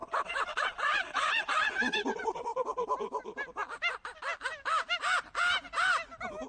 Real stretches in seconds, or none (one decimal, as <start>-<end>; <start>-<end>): 2.5-6.5